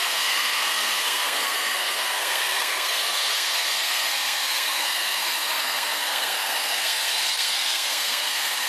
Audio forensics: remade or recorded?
remade